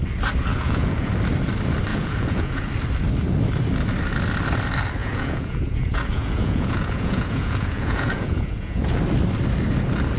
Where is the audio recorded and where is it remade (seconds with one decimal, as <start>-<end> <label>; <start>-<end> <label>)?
0.0-0.5 recorded; 0.5-1.1 remade; 1.1-1.9 recorded; 1.9-2.7 remade; 2.7-5.0 recorded; 5.0-9.0 remade; 9.0-10.2 recorded